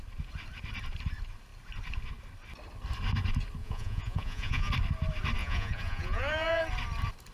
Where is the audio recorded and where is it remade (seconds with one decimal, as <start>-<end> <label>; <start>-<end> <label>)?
0.0-3.6 recorded; 3.6-4.7 remade; 4.7-5.4 recorded; 5.4-6.6 remade; 6.6-7.3 recorded